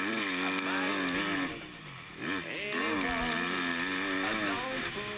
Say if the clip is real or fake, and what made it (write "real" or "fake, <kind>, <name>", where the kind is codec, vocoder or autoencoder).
real